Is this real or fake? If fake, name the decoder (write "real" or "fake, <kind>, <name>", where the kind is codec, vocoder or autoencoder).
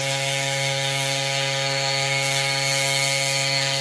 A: fake, codec, SNAC